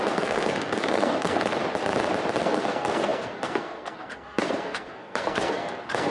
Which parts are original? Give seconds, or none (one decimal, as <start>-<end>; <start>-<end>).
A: 1.6-2.4